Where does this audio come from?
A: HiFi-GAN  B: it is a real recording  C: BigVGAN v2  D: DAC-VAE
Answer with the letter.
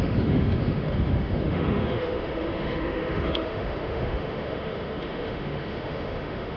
D